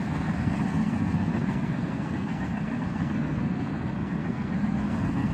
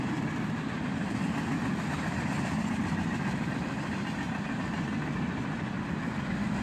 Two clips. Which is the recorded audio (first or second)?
second